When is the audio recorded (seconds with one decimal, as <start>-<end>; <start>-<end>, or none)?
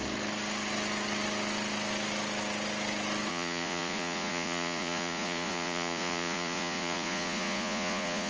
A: 0.0-3.3